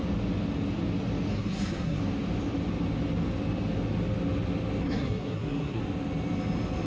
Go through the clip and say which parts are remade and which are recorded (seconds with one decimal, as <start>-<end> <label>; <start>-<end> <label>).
0.0-1.3 recorded; 1.3-2.0 remade; 2.0-4.8 recorded; 4.8-5.8 remade; 5.8-6.9 recorded